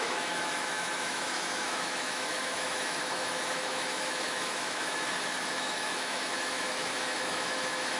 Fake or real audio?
fake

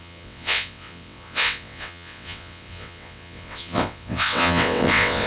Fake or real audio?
fake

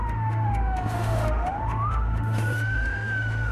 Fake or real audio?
fake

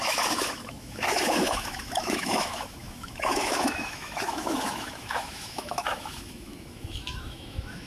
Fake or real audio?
fake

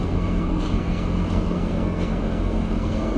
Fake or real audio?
fake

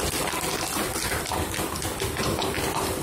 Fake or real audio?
real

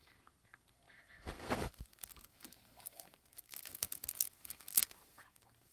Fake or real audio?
fake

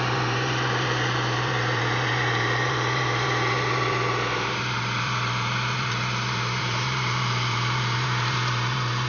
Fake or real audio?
fake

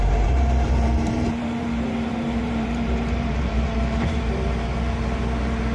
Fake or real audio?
fake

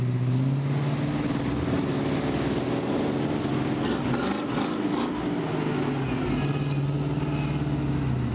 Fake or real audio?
real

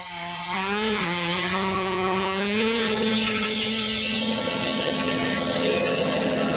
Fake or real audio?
fake